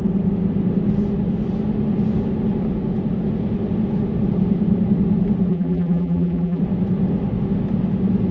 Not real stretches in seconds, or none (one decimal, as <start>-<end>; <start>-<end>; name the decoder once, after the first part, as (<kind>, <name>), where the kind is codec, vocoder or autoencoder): 5.5-6.6 (vocoder, BigVGAN v2)